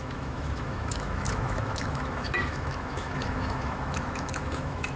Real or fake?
fake